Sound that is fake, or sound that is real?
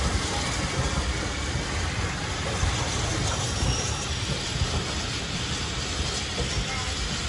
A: real